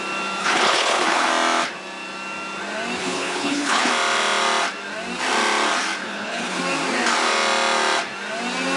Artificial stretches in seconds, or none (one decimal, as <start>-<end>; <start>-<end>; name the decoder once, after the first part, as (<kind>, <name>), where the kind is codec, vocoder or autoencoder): 0.4-1.3 (codec, HILCodec); 3.0-3.9; 6.0-6.6